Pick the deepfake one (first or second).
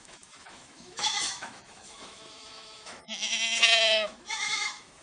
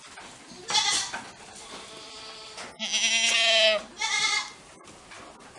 first